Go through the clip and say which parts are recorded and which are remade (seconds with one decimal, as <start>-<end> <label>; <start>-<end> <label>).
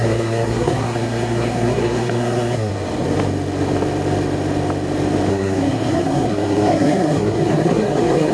0.0-2.7 remade; 2.7-5.3 recorded; 5.3-8.3 remade